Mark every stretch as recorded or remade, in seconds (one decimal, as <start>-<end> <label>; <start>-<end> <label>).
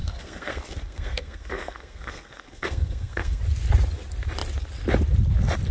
0.0-3.4 remade; 3.4-5.7 recorded